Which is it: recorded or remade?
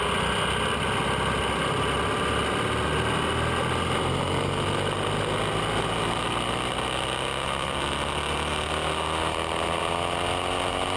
recorded